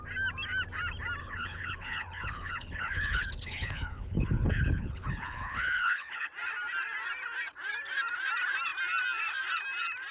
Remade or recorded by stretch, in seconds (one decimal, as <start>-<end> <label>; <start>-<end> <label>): 0.0-1.2 recorded; 1.2-6.3 remade; 6.3-10.1 recorded